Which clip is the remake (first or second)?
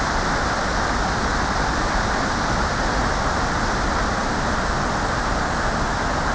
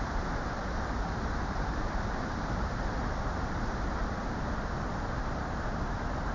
second